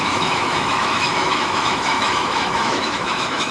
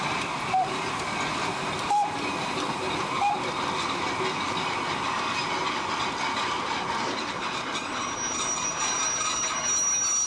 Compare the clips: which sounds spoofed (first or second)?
first